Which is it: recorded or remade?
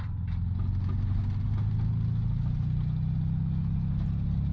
recorded